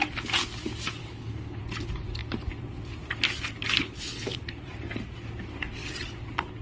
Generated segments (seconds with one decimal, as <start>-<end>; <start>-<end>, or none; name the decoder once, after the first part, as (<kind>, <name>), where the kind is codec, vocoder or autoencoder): 1.0-1.6 (codec, HILCodec); 3.8-4.4